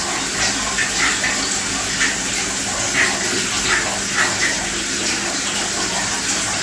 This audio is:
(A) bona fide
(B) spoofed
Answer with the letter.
A